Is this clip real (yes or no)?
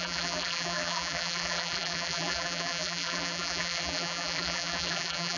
no